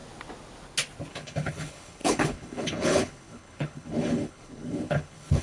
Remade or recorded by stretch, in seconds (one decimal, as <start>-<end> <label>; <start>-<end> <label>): 0.0-1.1 recorded; 1.1-5.4 remade